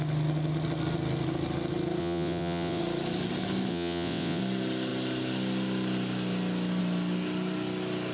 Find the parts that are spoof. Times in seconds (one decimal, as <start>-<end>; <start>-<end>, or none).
2.0-2.8; 3.7-4.4